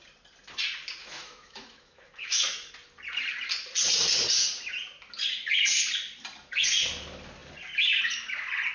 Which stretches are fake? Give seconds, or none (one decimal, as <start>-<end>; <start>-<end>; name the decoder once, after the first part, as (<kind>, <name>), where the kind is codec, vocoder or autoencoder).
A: 1.0-2.7 (autoencoder, DAC-VAE)